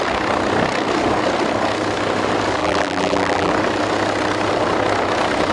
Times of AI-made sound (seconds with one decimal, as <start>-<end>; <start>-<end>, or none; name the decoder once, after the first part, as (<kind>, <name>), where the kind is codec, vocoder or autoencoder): 2.6-3.5 (vocoder, BigVGAN v2)